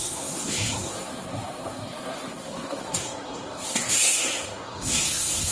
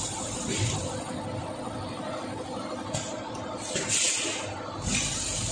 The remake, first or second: first